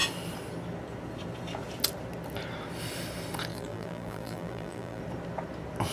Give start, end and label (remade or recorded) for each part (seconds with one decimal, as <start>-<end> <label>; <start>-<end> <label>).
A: 0.0-3.5 recorded; 3.5-5.0 remade; 5.0-5.9 recorded